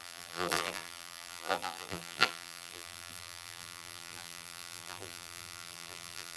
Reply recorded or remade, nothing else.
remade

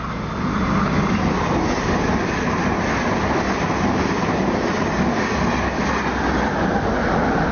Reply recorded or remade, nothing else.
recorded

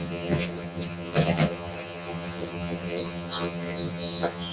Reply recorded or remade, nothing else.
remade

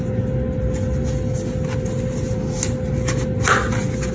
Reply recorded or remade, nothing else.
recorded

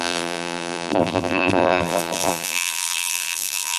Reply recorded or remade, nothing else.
remade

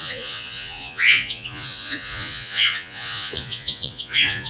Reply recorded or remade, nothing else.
remade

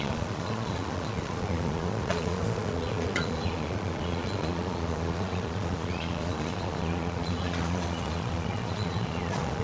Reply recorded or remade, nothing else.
remade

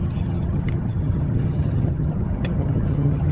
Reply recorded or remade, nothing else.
remade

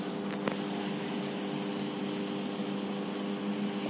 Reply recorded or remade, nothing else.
recorded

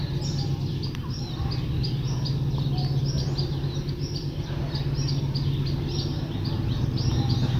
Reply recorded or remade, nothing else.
recorded